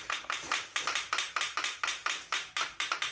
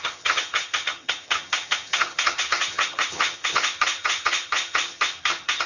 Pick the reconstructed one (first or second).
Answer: second